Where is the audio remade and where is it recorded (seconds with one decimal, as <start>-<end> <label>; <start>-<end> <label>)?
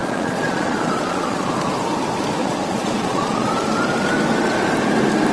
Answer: 0.0-1.5 remade; 1.5-2.4 recorded; 2.4-3.5 remade; 3.5-5.3 recorded